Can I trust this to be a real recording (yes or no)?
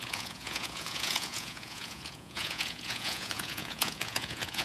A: no